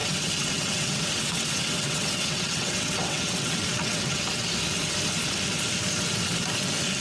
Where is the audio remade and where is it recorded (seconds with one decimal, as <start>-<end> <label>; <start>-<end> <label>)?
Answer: 0.0-4.2 remade; 4.2-7.0 recorded